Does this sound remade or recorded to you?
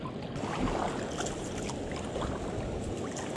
recorded